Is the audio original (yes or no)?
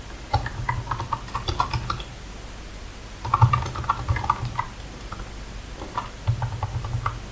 yes